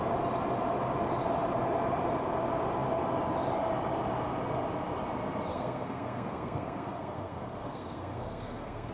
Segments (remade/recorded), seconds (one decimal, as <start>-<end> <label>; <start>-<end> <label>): 0.0-5.5 recorded; 5.5-8.9 remade